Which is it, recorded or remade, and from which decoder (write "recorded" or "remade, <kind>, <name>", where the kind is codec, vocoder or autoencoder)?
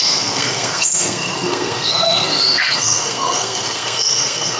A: remade, codec, SNAC